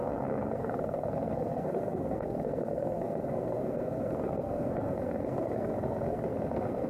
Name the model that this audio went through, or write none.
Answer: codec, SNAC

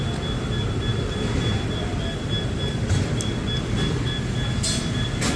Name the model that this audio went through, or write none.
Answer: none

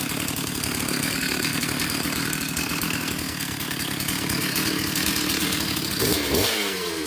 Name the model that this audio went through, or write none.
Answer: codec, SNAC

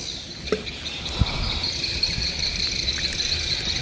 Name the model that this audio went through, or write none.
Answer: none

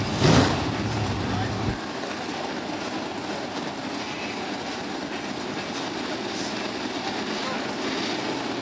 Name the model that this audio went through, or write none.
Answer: none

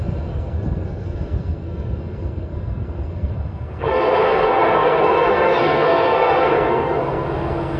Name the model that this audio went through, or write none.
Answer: codec, SNAC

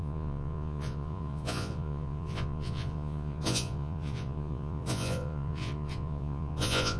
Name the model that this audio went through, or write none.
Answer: vocoder, Vocos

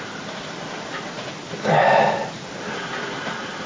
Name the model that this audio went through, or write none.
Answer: none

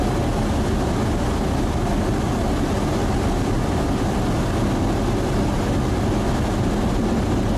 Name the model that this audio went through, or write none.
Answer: none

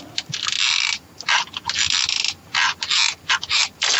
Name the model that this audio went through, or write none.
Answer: none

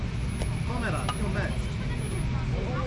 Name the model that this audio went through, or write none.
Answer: none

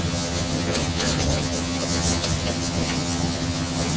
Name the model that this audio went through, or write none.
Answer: vocoder, HiFi-GAN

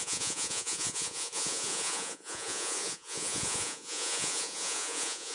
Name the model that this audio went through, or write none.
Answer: vocoder, Vocos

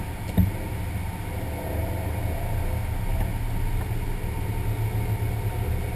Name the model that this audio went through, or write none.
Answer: none